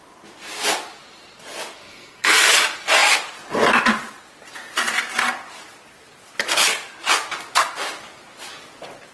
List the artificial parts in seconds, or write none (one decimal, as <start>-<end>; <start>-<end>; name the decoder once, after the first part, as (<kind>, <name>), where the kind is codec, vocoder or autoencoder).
1.8-2.4 (codec, SNAC)